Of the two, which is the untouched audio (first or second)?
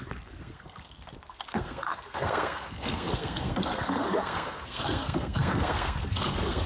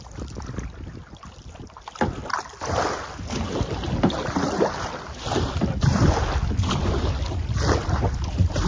second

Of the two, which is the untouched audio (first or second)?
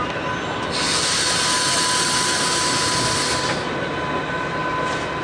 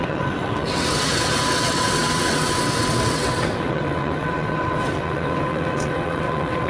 first